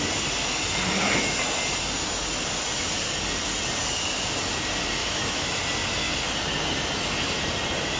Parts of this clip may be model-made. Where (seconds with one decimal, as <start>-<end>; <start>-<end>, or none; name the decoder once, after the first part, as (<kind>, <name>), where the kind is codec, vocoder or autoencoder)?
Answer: 5.0-5.6 (autoencoder, DAC-VAE)